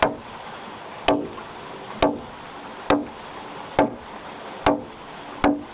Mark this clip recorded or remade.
recorded